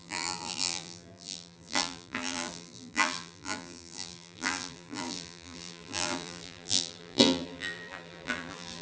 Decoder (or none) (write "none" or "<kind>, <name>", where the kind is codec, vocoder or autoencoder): vocoder, BigVGAN v2